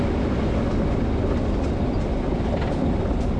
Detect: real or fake real